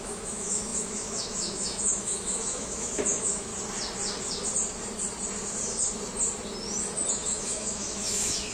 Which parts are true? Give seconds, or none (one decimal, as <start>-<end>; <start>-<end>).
3.5-7.1

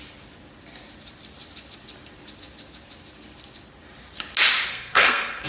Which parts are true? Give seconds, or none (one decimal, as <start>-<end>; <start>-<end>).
0.0-4.7

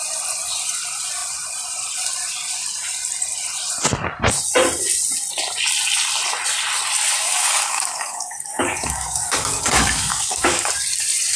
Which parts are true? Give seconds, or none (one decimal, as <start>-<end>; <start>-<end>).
0.0-7.2; 10.7-11.4

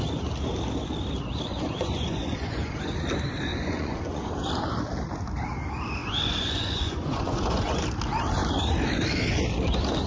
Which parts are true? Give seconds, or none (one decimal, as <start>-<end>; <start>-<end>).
0.0-1.5; 2.7-3.5; 4.3-6.0; 7.8-10.1

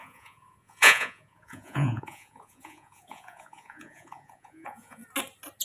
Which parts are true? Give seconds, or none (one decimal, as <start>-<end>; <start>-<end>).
5.0-5.6

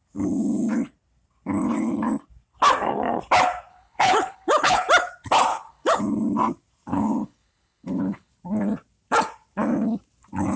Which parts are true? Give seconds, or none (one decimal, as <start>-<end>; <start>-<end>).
0.0-3.7; 4.9-5.5; 6.0-6.9; 8.3-10.6